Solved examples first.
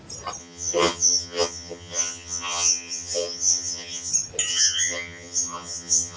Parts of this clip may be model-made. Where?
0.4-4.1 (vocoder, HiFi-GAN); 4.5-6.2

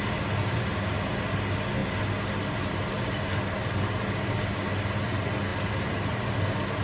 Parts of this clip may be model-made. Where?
none

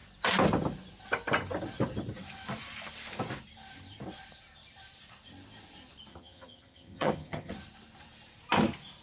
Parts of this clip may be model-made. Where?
6.1-7.5 (vocoder, HiFi-GAN)

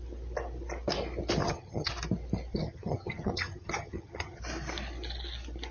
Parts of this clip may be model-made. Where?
1.4-1.9 (vocoder, HiFi-GAN); 2.5-4.4

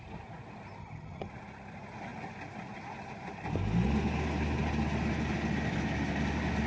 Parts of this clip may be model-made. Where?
0.8-1.3 (vocoder, HiFi-GAN)

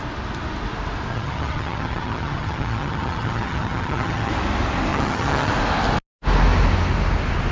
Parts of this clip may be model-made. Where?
1.1-4.3 (vocoder, HiFi-GAN); 4.9-5.5

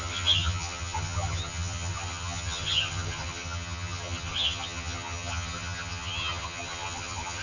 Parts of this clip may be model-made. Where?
0.0-7.4 (vocoder, HiFi-GAN)